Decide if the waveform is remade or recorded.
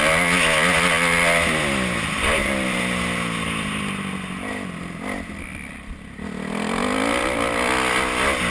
recorded